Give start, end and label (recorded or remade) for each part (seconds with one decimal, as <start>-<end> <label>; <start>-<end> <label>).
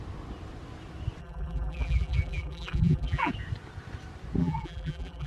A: 0.0-1.2 recorded; 1.2-3.3 remade; 3.3-4.4 recorded; 4.4-5.3 remade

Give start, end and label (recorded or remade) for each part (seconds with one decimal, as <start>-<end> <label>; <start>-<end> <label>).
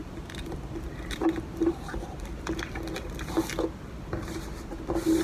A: 0.0-1.8 remade; 1.8-5.2 recorded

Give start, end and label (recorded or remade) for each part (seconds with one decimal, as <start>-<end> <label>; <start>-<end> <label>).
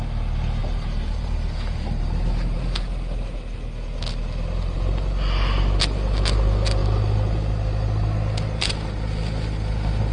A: 0.0-0.6 recorded; 0.6-2.6 remade; 2.6-10.1 recorded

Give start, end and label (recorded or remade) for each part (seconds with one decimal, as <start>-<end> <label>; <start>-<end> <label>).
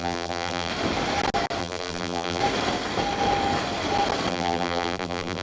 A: 0.0-0.7 remade; 0.7-1.6 recorded; 1.6-2.4 remade; 2.4-4.3 recorded; 4.3-5.4 remade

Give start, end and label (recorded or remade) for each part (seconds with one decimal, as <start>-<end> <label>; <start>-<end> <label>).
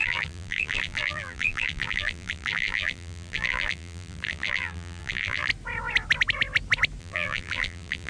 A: 0.0-5.5 remade; 5.5-7.0 recorded; 7.0-8.1 remade